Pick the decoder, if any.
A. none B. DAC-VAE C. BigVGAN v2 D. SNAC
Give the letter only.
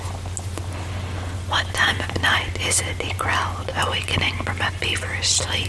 A